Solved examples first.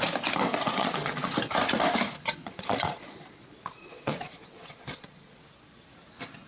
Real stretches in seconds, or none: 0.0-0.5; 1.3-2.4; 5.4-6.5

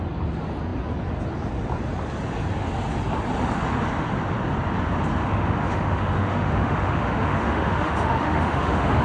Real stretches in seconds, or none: 0.0-5.2

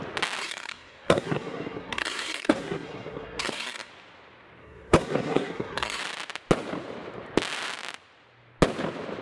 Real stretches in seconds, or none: 0.0-0.4; 3.9-4.6; 6.0-9.2

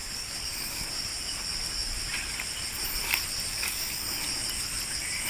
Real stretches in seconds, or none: 1.1-3.5; 4.2-5.3

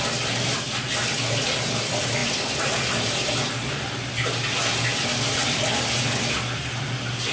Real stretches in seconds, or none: 0.0-7.3

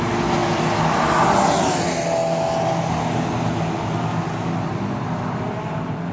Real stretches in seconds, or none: 0.0-6.1

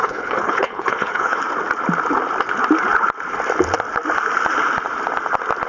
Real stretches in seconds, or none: 1.4-5.7